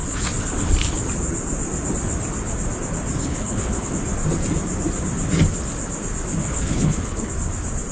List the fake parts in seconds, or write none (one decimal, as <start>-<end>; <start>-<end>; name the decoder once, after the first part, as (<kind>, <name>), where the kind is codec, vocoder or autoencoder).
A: 3.3-3.9 (codec, HILCodec); 6.4-7.3